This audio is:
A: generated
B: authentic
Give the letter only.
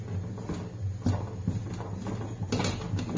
B